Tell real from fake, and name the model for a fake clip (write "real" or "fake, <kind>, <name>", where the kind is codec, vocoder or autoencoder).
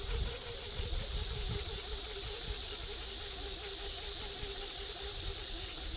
real